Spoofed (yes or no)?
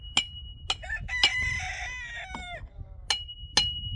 no